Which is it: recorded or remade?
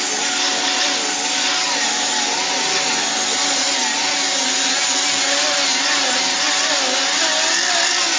recorded